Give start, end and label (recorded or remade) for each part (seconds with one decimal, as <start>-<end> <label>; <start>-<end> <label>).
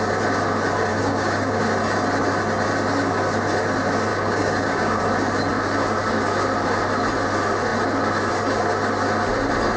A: 0.0-0.9 recorded; 0.9-1.6 remade; 1.6-4.1 recorded; 4.1-5.0 remade; 5.0-9.8 recorded